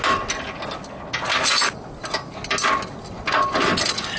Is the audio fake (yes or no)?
no